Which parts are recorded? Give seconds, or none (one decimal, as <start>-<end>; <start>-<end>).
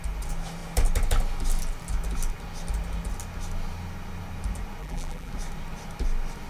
0.0-4.8; 5.3-6.5